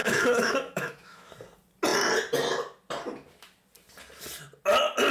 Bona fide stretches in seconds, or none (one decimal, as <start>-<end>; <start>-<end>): 1.3-5.1